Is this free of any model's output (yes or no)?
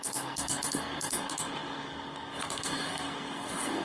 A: no